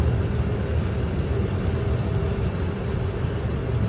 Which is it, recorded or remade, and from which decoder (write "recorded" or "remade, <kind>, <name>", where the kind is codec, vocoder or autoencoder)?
recorded